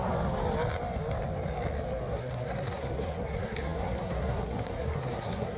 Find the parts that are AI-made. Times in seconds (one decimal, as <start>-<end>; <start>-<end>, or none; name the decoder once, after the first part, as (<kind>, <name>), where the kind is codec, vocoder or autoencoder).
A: 2.1-5.6 (codec, SNAC)